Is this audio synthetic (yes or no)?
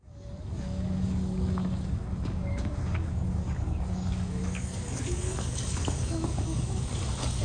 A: yes